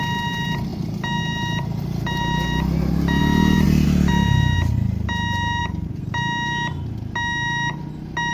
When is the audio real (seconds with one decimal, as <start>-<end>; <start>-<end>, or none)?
0.0-8.3